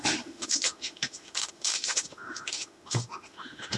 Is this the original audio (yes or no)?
no